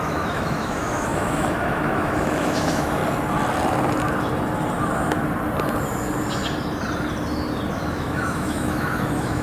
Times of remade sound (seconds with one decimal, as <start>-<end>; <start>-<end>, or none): 0.0-3.0; 7.7-9.4

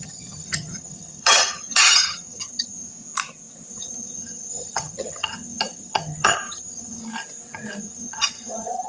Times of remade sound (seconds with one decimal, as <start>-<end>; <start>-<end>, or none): 0.0-2.9; 3.7-7.0; 7.8-8.9